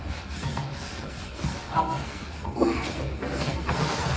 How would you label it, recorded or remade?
remade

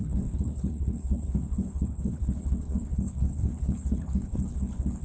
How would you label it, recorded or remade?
remade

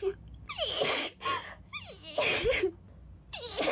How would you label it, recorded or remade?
recorded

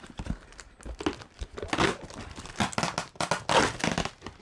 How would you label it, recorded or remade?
recorded